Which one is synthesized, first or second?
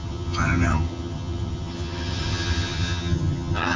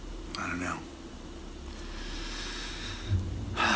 first